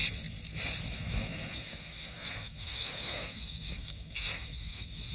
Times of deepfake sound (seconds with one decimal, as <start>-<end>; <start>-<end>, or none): 0.9-5.1